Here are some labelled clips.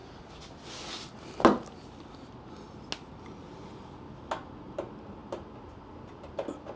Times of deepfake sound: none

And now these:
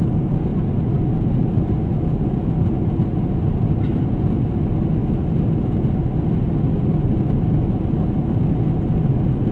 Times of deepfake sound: none

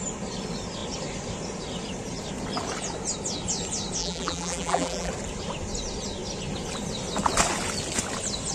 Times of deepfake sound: 4.0-5.1 (vocoder, BigVGAN v2)

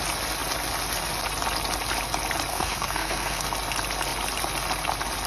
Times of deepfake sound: 2.5-3.4 (codec, SNAC)